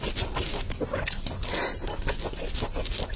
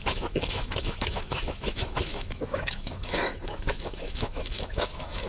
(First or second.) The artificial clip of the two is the second